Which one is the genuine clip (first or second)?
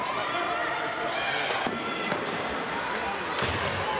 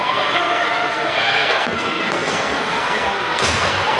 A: first